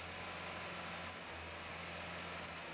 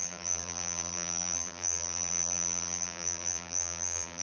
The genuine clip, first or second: first